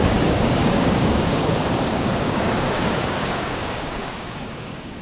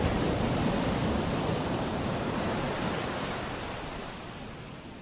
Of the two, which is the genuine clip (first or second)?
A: second